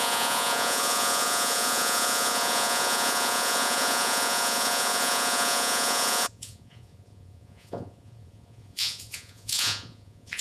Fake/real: fake